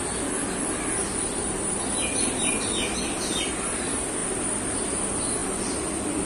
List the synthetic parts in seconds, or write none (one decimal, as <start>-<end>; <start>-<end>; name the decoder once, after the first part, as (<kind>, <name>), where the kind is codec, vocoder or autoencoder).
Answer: 1.4-2.6 (vocoder, BigVGAN v2); 4.2-4.9